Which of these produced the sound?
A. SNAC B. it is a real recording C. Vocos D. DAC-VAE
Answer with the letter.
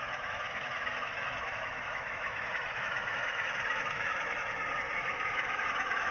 D